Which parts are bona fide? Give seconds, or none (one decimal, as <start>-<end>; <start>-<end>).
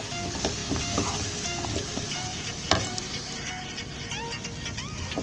0.0-2.3; 3.5-5.2